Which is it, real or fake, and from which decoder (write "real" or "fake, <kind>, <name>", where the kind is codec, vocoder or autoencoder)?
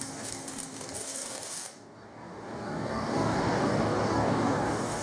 fake, codec, DAC